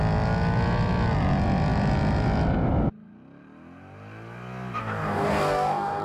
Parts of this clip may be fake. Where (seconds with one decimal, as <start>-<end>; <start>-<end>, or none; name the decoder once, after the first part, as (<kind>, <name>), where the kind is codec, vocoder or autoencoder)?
4.8-6.0 (codec, DAC)